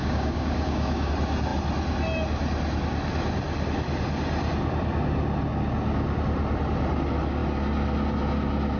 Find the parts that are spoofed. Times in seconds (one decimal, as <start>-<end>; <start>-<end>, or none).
0.0-1.1